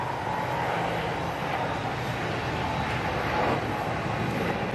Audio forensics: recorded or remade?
recorded